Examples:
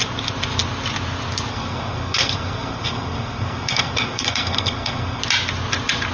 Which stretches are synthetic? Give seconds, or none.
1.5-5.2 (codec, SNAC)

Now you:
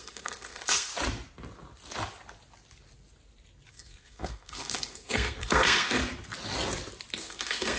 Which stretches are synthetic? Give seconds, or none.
0.0-0.9 (codec, SNAC); 3.7-6.0; 7.2-7.8

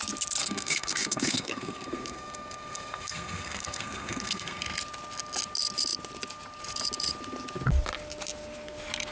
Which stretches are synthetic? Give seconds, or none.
0.4-4.6 (codec, SNAC)

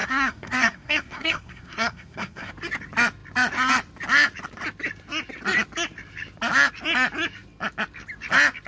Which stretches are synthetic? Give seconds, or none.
0.0-2.5 (codec, SNAC)

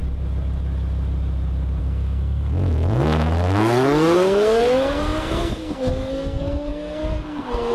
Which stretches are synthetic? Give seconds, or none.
1.8-7.7 (codec, SNAC)

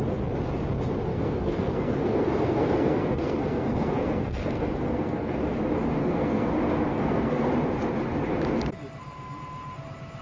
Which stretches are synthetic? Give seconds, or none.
1.1-5.6 (codec, SNAC); 6.0-6.5; 6.9-7.5

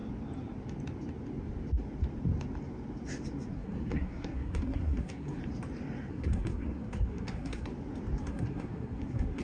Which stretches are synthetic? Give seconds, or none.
3.5-5.4 (codec, SNAC); 6.1-7.7; 8.2-9.4